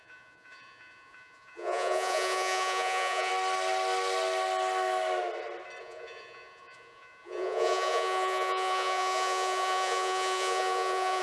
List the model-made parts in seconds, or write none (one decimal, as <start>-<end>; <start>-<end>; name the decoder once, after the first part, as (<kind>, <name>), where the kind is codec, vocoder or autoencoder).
0.0-3.3 (vocoder, Vocos); 5.8-11.2